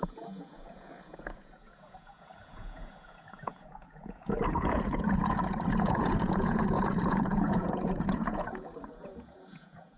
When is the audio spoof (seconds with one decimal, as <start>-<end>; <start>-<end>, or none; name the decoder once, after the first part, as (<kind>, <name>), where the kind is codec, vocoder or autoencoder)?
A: 0.0-10.0 (vocoder, Vocos)